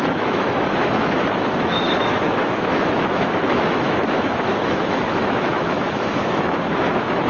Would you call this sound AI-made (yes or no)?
yes